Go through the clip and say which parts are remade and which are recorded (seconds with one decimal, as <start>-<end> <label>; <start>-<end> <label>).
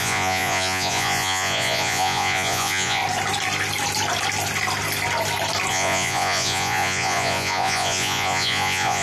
0.0-3.0 remade; 3.0-5.7 recorded; 5.7-9.0 remade